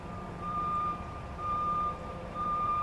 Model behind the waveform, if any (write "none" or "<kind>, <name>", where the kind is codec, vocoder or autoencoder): vocoder, BigVGAN v2